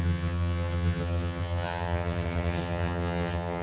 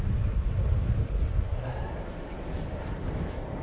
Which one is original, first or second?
second